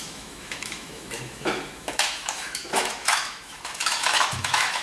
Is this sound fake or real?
fake